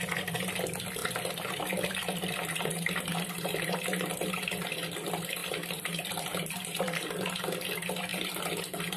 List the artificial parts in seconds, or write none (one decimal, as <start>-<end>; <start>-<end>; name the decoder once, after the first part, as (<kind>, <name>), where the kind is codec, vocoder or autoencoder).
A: 1.0-4.3 (vocoder, BigVGAN v2); 5.4-6.5; 8.1-9.0